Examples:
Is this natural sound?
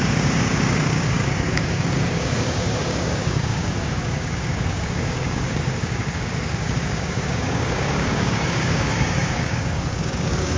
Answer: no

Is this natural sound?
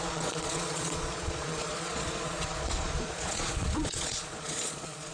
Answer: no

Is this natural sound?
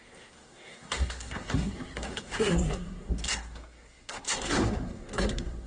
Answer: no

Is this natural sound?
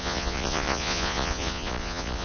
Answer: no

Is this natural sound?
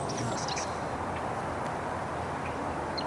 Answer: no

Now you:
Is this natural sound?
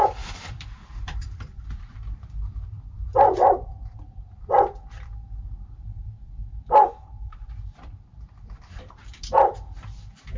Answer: no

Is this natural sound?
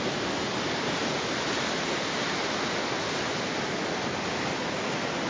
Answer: yes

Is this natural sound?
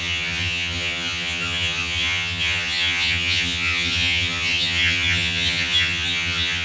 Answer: no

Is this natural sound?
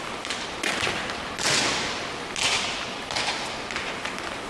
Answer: yes